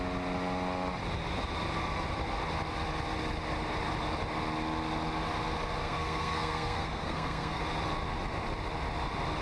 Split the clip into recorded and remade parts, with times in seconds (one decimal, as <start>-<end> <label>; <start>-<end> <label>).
0.0-5.8 recorded; 5.8-7.6 remade; 7.6-9.4 recorded